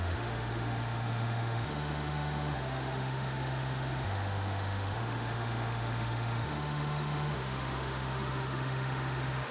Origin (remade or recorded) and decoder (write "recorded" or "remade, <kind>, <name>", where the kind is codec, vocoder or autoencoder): remade, autoencoder, DAC-VAE